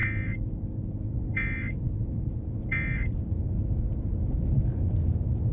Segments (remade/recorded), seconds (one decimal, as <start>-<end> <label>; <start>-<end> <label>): 0.0-5.5 recorded